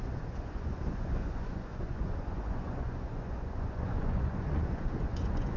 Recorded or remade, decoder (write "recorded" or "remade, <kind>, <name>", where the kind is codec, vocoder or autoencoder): remade, vocoder, Vocos